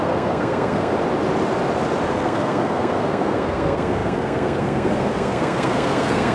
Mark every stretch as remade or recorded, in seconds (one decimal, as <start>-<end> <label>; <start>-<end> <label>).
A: 0.0-0.9 remade; 0.9-2.1 recorded; 2.1-6.3 remade